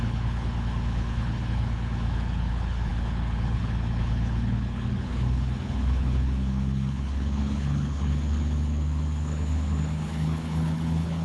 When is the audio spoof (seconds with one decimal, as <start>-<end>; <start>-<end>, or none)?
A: 0.0-11.2